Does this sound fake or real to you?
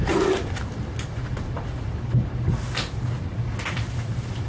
real